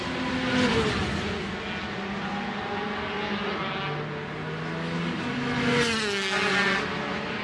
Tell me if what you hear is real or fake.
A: real